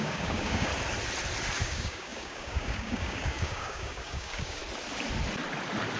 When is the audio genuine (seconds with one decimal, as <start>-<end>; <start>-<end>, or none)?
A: 0.7-1.6; 4.6-6.0